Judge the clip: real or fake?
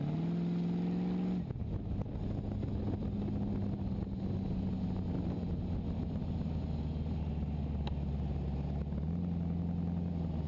real